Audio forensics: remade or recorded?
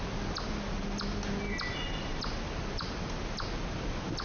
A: recorded